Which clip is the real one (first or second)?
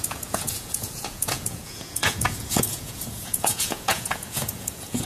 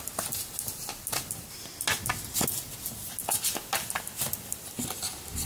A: second